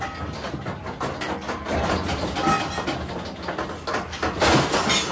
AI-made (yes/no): no